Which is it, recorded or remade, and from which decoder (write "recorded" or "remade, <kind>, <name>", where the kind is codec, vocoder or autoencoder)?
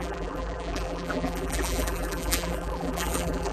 remade, vocoder, BigVGAN v2